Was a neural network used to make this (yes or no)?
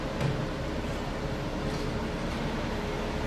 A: no